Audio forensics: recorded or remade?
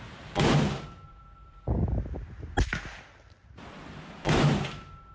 recorded